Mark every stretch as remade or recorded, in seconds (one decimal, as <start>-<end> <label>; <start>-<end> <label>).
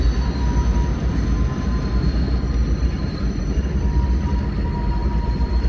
0.0-2.6 recorded; 2.6-3.7 remade; 3.7-5.0 recorded; 5.0-5.7 remade